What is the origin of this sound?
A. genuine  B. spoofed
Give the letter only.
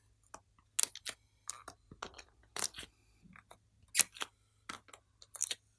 A